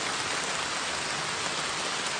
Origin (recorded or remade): recorded